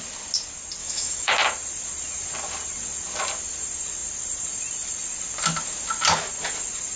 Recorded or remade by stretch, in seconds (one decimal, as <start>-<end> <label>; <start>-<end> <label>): 0.0-0.8 recorded; 0.8-1.3 remade; 1.3-7.0 recorded